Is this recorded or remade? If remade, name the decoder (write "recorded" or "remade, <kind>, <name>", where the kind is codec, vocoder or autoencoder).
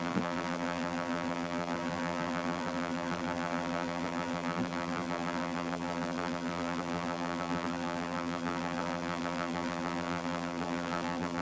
remade, vocoder, BigVGAN v2